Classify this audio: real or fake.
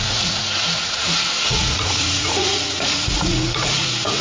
fake